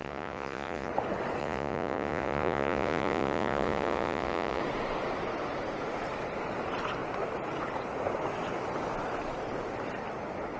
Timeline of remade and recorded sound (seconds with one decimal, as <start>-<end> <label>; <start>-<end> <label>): 0.0-0.9 remade; 0.9-1.4 recorded; 1.4-4.6 remade; 4.6-10.6 recorded